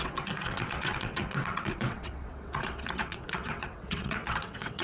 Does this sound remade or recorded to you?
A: remade